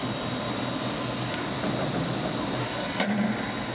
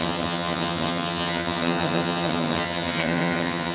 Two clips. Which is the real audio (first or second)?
first